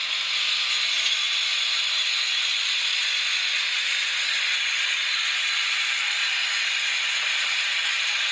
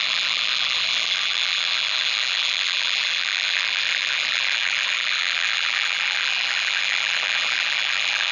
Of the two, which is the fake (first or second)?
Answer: second